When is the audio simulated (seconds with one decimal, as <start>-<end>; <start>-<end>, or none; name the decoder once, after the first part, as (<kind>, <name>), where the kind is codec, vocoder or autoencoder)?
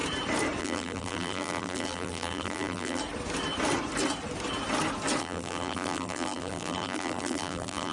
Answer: 0.6-3.0 (vocoder, BigVGAN v2); 5.2-7.9